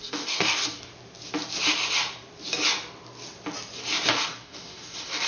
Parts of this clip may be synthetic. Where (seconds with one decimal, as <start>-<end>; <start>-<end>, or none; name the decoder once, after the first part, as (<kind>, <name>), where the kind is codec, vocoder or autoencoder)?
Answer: 0.0-0.9 (codec, DAC); 4.1-5.3